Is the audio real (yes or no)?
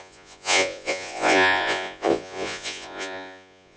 no